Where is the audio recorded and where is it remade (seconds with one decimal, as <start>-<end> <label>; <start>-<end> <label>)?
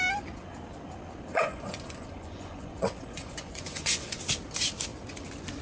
0.0-1.3 recorded; 1.3-4.2 remade; 4.2-5.6 recorded